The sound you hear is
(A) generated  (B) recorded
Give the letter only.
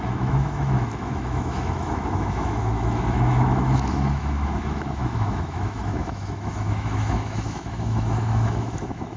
A